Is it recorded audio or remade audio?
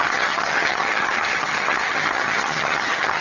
remade